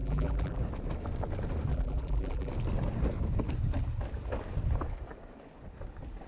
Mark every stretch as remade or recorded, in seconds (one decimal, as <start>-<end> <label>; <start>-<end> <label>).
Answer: 0.0-0.6 remade; 0.6-1.7 recorded; 1.7-2.5 remade; 2.5-6.3 recorded